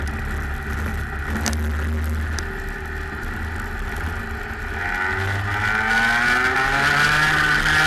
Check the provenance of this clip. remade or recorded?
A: recorded